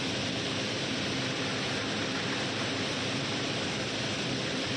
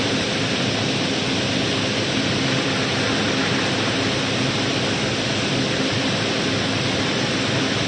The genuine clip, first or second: second